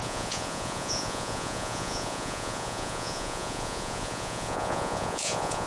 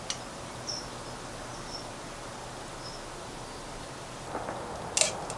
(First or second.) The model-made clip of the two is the first